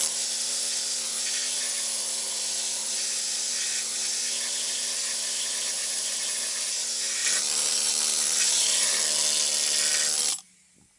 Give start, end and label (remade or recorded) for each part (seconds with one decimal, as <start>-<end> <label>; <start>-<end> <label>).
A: 0.0-5.8 recorded; 5.8-6.8 remade; 6.8-7.2 recorded; 7.2-9.0 remade; 9.0-11.0 recorded